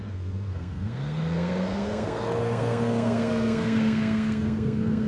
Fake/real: fake